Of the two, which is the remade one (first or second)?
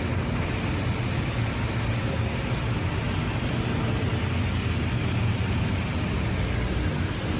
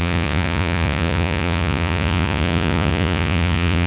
second